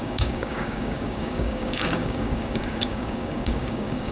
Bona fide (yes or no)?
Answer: no